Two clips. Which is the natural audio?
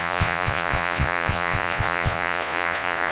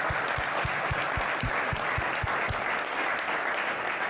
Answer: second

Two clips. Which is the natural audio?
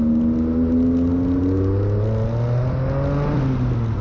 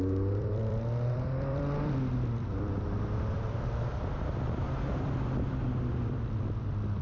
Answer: first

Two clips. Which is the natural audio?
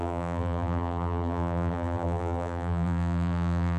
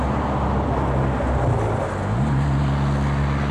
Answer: second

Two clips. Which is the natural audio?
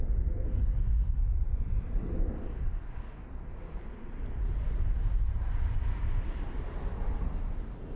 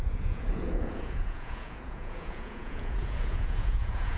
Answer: first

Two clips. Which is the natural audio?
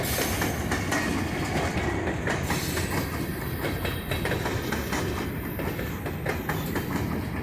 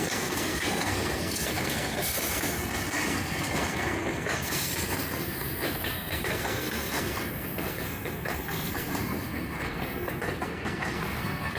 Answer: first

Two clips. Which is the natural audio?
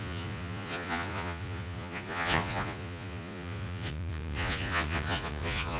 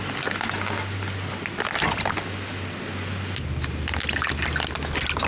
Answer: second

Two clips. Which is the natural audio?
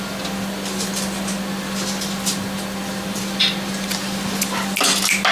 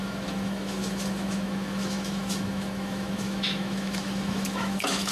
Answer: first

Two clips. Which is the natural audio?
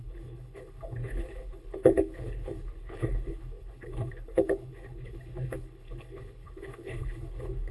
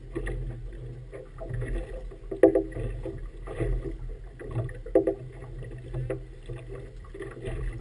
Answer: second